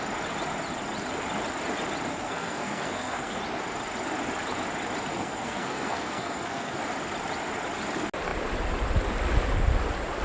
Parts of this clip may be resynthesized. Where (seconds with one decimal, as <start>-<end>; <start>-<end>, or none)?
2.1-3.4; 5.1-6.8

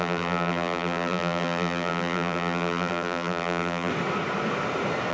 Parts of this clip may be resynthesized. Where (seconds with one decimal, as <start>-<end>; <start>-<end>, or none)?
0.0-3.9

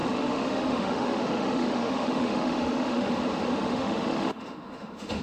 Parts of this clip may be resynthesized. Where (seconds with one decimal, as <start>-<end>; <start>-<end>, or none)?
0.0-3.1; 3.6-5.2

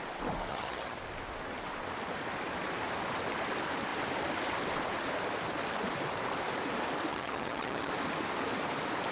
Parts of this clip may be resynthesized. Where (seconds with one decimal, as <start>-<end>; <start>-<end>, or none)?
0.5-1.0; 7.1-7.9

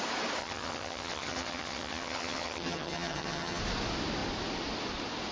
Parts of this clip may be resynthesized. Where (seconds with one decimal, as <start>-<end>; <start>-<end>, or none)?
0.4-3.6

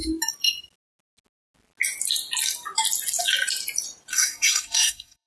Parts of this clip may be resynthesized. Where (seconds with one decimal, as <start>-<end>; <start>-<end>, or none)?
4.1-5.3

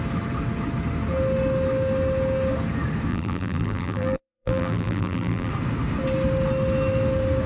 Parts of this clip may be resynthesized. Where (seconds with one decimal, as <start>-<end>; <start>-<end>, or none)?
3.1-5.5

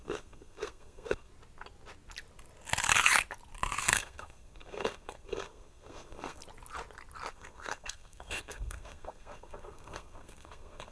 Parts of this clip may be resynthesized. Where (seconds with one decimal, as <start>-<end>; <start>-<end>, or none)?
0.0-1.3; 3.8-6.4; 7.3-10.9